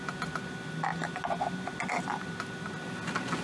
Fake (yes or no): no